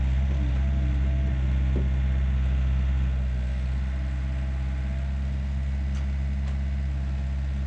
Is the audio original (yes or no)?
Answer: yes